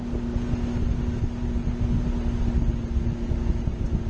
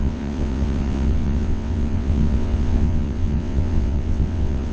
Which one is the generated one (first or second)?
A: second